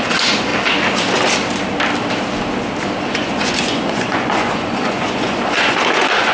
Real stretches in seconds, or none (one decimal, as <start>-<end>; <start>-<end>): 0.5-3.1